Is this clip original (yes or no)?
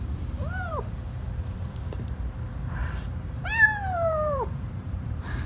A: no